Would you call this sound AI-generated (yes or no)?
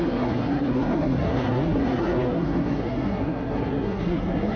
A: yes